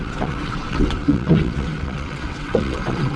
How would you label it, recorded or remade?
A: remade